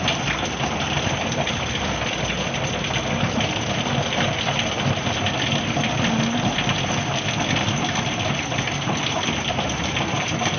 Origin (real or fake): real